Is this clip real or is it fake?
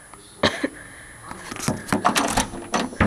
real